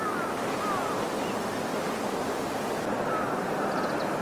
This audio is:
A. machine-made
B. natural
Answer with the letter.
B